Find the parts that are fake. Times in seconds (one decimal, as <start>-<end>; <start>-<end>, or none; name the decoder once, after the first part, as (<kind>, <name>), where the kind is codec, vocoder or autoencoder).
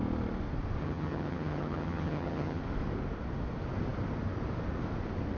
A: 0.8-2.6 (vocoder, HiFi-GAN)